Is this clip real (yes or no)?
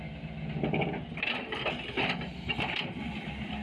yes